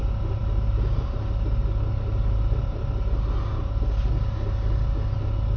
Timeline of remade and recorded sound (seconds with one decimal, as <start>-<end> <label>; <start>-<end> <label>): 0.0-5.6 recorded